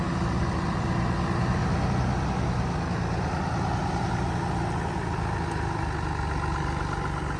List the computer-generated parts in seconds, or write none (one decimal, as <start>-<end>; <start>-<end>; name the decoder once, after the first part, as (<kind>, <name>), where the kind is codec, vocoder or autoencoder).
none

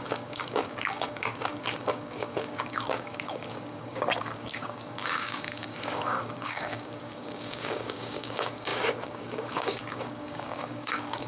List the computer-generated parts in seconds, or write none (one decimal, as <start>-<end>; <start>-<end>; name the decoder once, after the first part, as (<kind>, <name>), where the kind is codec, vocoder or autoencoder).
0.0-11.3 (codec, DAC)

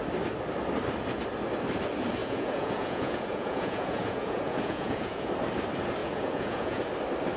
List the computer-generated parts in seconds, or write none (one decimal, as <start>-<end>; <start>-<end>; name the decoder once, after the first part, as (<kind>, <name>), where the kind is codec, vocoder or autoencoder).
2.2-5.3 (vocoder, Vocos); 6.0-6.8

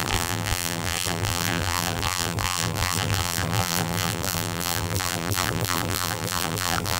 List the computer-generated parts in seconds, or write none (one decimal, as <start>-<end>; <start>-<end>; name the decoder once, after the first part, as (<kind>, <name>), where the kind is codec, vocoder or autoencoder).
0.0-7.0 (vocoder, BigVGAN v2)